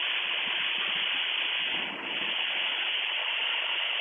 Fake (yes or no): no